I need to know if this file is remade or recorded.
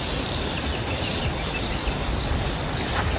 recorded